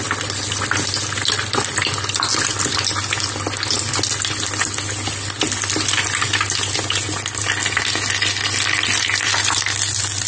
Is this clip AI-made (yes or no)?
no